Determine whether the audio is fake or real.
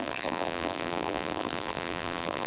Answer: fake